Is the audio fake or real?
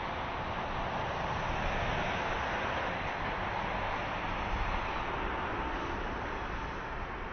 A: real